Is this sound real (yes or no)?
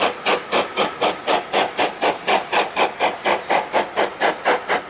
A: yes